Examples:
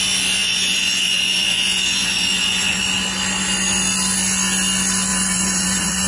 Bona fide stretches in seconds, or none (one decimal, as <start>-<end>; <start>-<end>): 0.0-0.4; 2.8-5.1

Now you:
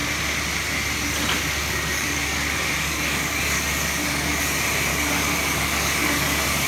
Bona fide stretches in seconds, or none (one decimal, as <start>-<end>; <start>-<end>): 0.0-1.6; 4.4-4.9

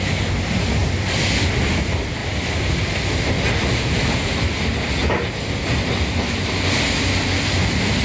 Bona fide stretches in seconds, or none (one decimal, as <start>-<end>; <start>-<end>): 0.0-8.0